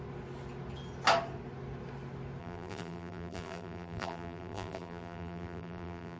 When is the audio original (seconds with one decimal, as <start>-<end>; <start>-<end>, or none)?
0.0-2.4